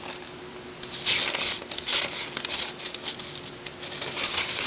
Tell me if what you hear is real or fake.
real